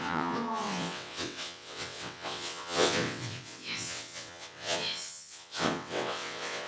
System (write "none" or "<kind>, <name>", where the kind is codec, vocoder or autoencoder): vocoder, WaveNeXt